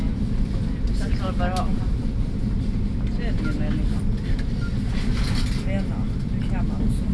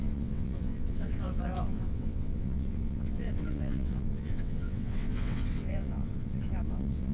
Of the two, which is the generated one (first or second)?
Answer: second